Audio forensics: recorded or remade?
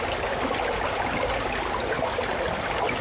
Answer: recorded